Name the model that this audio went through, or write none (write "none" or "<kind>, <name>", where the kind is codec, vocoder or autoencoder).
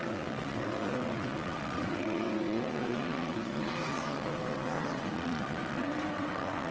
vocoder, WaveNeXt